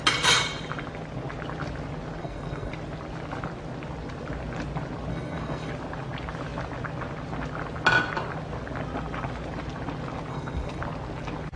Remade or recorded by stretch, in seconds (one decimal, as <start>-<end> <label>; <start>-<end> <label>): 0.0-2.2 recorded; 2.2-2.7 remade; 2.7-5.1 recorded; 5.1-5.7 remade; 5.7-10.3 recorded; 10.3-10.8 remade; 10.8-11.6 recorded